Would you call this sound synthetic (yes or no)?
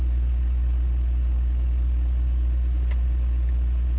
no